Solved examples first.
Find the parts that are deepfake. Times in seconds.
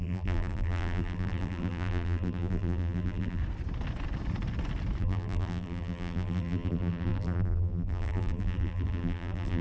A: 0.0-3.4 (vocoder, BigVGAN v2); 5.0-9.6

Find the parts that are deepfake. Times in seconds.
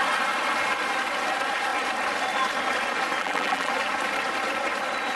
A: 3.2-3.7 (vocoder, BigVGAN v2)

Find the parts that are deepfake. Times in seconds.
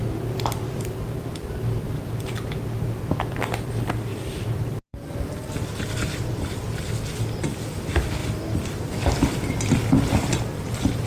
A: 4.1-6.5 (vocoder, BigVGAN v2); 8.2-10.3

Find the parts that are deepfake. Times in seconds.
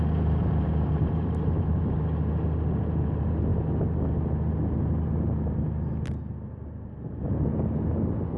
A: 0.4-1.8 (vocoder, BigVGAN v2)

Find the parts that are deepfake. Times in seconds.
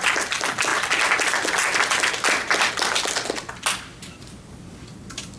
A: 3.9-4.4 (vocoder, BigVGAN v2)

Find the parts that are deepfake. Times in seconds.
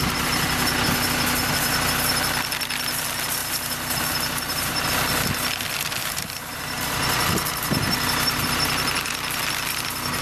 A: 3.4-4.9 (vocoder, BigVGAN v2); 6.0-6.6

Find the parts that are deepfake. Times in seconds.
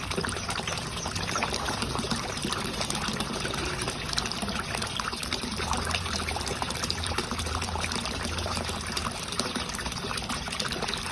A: 0.0-11.1 (vocoder, BigVGAN v2)